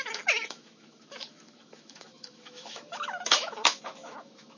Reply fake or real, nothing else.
fake